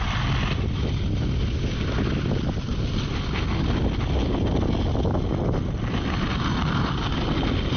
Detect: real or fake real